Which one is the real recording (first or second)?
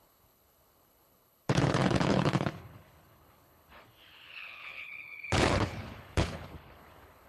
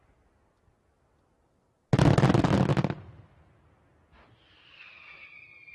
second